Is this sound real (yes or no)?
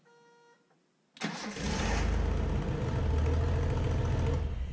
yes